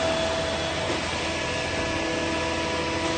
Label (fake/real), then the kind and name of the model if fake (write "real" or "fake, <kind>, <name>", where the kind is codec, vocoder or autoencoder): real